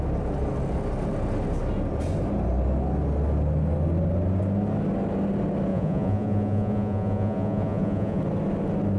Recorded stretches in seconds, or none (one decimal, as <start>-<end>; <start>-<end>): 0.0-5.7; 8.2-9.0